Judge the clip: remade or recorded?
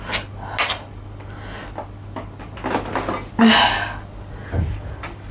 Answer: recorded